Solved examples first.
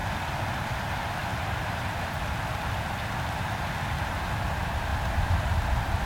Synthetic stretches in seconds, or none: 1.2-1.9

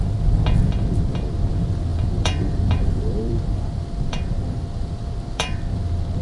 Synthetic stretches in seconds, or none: 1.9-5.6

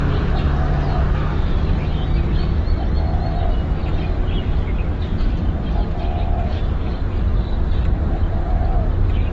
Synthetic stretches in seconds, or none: none

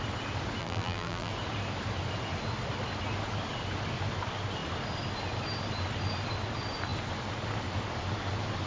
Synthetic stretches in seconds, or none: 0.6-1.3